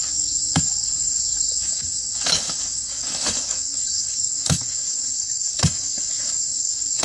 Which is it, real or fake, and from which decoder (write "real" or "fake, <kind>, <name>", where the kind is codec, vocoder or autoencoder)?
fake, codec, DAC